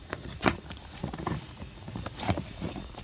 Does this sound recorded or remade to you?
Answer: remade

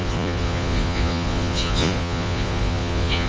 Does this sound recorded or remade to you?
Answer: remade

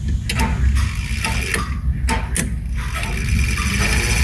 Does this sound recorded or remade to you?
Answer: recorded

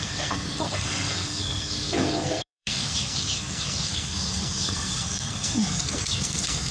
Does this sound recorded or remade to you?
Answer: remade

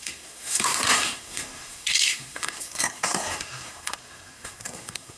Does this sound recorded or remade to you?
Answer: remade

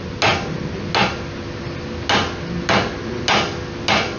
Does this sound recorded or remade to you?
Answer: recorded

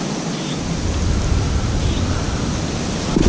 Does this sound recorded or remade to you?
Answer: recorded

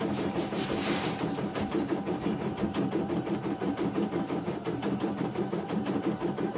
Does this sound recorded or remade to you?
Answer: remade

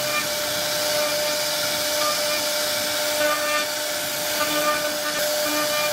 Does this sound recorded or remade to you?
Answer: recorded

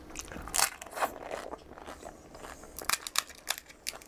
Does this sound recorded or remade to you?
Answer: recorded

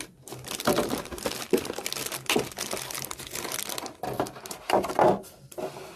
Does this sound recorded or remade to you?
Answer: recorded